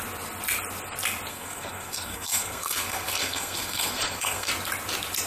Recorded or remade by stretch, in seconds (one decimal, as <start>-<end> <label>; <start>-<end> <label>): 0.0-1.3 recorded; 1.3-4.5 remade; 4.5-5.3 recorded